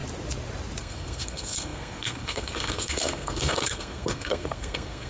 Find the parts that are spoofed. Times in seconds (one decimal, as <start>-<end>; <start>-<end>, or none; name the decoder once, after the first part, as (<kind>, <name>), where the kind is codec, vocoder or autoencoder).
0.8-5.1 (codec, SNAC)